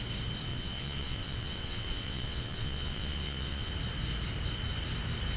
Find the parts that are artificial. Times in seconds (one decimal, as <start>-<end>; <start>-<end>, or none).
0.5-3.7